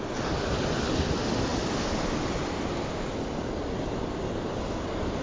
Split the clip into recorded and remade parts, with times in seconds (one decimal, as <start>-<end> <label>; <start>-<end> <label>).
0.0-5.2 recorded